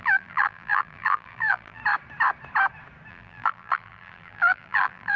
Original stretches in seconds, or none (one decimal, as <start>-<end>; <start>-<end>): 1.8-3.1